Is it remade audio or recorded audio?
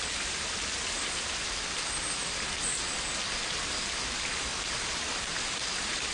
recorded